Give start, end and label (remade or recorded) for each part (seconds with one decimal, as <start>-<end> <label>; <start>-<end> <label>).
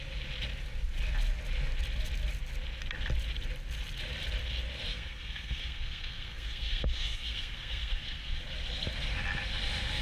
0.0-4.9 recorded; 4.9-8.4 remade; 8.4-10.0 recorded